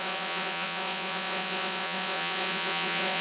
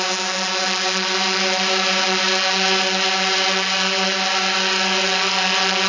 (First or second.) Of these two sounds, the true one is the second